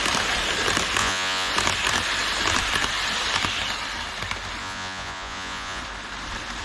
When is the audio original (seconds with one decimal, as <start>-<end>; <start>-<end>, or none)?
0.0-1.0; 1.5-4.6; 5.8-6.6